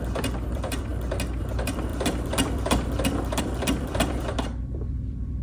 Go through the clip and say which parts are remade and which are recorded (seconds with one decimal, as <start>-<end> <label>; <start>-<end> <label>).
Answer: 0.0-0.9 remade; 0.9-1.4 recorded; 1.4-5.4 remade